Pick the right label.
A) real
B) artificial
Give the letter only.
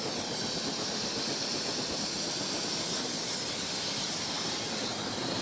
A